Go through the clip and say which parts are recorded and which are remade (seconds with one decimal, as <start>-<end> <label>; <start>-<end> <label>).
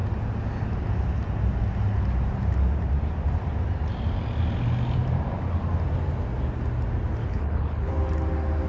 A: 0.0-7.2 recorded; 7.2-7.9 remade; 7.9-8.7 recorded